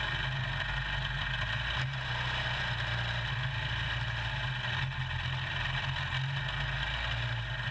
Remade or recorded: recorded